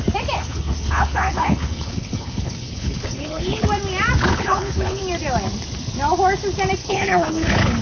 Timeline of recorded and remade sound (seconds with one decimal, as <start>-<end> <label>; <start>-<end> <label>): 0.0-0.4 recorded; 0.4-3.6 remade; 3.6-4.3 recorded; 4.3-5.0 remade; 5.0-6.8 recorded; 6.8-7.8 remade